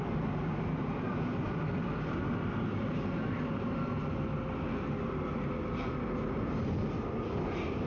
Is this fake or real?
real